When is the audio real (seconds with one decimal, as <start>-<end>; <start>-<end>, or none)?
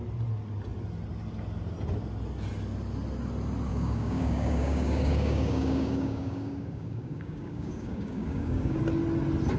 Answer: 0.0-3.7; 8.8-9.6